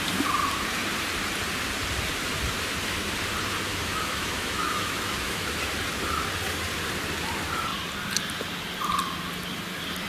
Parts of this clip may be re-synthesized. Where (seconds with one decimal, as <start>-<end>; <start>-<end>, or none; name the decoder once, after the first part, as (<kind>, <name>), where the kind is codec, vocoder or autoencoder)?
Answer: 3.7-5.6 (autoencoder, DAC-VAE)